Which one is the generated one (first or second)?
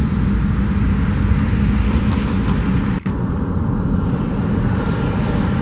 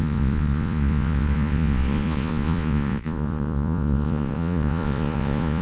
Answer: second